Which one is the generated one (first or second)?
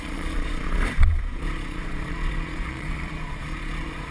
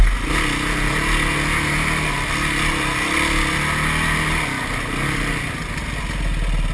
first